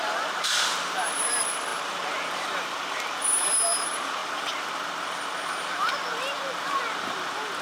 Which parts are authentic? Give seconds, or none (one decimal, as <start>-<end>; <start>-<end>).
4.2-7.6